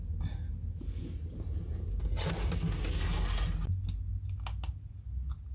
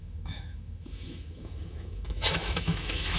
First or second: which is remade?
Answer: second